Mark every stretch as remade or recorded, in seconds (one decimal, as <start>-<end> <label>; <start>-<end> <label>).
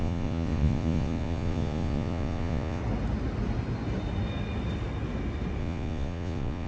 0.0-2.8 remade; 2.8-5.6 recorded; 5.6-6.7 remade